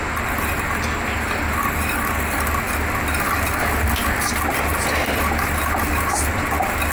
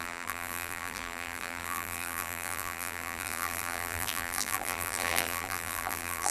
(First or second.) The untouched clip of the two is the first